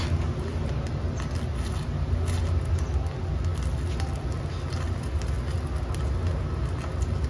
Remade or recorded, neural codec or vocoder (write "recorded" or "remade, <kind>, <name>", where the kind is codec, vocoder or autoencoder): recorded